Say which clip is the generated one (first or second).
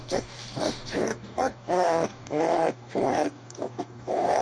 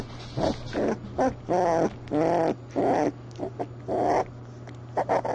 first